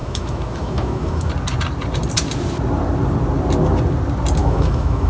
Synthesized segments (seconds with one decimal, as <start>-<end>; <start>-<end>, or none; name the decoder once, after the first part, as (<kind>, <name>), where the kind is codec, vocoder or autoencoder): 0.0-1.3 (autoencoder, DAC-VAE); 4.4-5.1